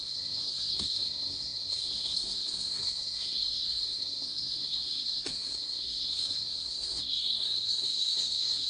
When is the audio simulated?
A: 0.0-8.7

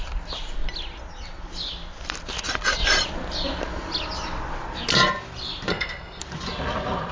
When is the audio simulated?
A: 5.7-6.2

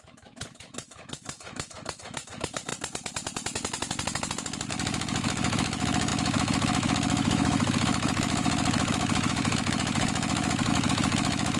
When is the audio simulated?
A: 0.0-2.7; 4.7-11.6

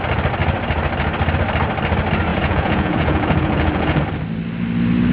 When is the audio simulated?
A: 2.3-4.0

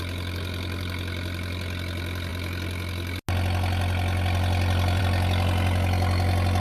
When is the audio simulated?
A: none